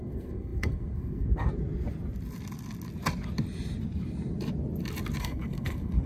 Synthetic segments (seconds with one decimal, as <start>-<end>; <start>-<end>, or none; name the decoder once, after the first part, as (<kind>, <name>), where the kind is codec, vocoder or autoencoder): 0.0-1.5 (codec, SNAC); 5.2-6.1